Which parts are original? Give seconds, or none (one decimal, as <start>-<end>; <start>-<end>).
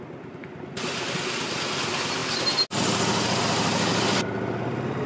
0.0-5.1